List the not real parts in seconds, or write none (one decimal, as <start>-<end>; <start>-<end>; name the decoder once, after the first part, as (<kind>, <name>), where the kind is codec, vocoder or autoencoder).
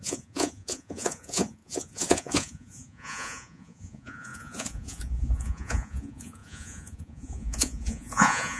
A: 0.0-8.6 (vocoder, Vocos)